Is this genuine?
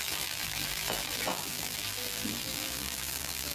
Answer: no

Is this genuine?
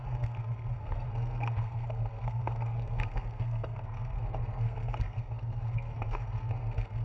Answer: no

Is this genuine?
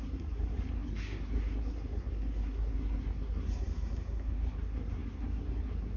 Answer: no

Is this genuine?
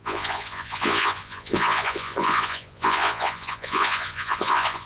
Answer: no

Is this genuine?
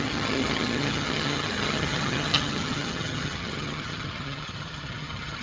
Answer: no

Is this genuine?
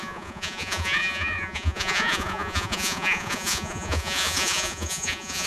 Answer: no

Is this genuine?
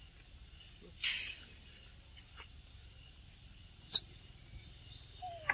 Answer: yes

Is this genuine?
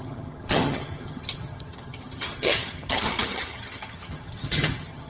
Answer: no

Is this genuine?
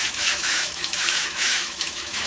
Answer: no